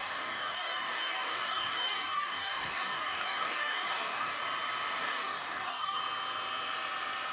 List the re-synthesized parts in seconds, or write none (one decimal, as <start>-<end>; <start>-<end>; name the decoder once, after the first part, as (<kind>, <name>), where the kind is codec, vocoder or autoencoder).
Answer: 0.0-4.4 (codec, DAC); 5.0-6.0

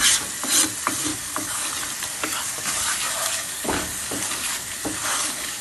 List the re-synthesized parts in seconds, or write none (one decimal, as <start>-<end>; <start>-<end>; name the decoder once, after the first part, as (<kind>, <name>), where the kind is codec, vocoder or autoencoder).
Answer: 1.1-1.7 (codec, DAC); 2.1-5.6

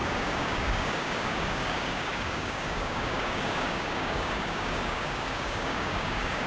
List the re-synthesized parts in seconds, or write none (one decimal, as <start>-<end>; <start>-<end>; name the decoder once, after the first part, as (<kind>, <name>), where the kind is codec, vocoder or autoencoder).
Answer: 0.0-6.5 (codec, DAC)

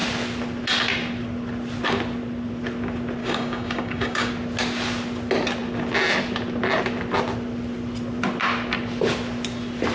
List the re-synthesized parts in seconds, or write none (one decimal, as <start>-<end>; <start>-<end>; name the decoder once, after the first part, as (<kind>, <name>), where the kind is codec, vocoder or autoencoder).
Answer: 3.2-4.3 (codec, DAC)

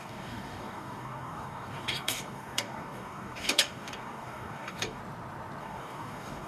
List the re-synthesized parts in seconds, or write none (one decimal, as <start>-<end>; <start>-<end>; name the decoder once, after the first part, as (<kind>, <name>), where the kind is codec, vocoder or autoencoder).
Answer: 0.0-5.0 (codec, DAC); 5.6-6.5